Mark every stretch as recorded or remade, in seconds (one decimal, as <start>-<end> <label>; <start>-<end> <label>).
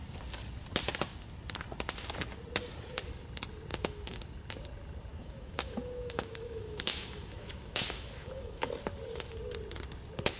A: 0.0-3.7 recorded; 3.7-4.2 remade; 4.2-5.1 recorded; 5.1-8.7 remade; 8.7-10.4 recorded